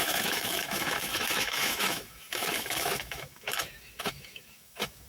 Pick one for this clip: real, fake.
fake